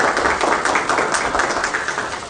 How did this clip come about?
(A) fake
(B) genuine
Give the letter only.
B